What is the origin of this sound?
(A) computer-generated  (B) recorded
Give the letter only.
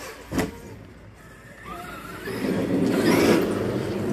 B